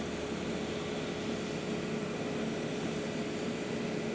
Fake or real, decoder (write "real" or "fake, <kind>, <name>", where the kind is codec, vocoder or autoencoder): real